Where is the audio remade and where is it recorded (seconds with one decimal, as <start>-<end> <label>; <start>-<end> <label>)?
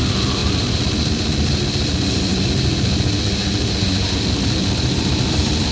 0.0-0.4 recorded; 0.4-0.9 remade; 0.9-5.7 recorded